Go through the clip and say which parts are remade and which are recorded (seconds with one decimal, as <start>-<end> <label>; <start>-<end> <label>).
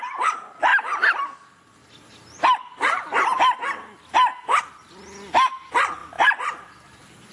0.0-7.3 recorded